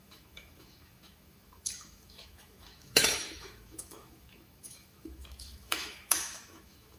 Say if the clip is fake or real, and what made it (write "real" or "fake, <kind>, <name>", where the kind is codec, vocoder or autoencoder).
fake, autoencoder, DAC-VAE